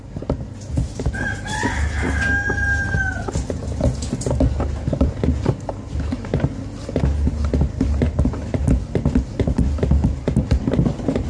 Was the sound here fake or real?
real